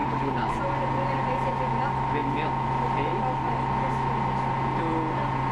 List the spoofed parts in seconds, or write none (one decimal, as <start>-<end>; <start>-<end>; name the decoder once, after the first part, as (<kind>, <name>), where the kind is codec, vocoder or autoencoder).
0.0-0.6 (codec, HILCodec)